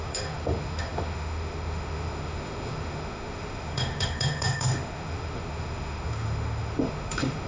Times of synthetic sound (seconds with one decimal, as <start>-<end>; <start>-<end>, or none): 0.0-7.5